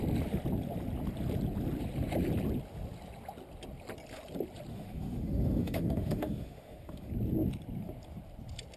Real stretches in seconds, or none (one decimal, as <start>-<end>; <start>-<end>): 0.0-4.7; 7.1-8.8